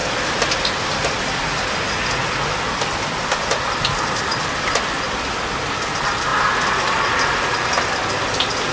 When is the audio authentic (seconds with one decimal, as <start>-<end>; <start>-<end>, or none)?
0.0-8.7